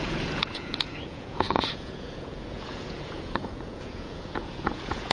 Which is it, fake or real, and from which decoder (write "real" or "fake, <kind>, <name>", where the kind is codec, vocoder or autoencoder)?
fake, vocoder, Vocos